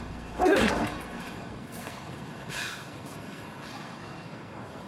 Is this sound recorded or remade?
remade